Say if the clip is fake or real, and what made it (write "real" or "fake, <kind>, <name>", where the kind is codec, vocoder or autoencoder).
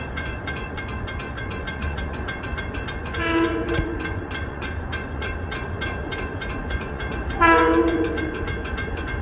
fake, vocoder, Vocos